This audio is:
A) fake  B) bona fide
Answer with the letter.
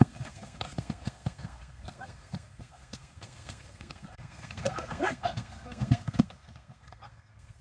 A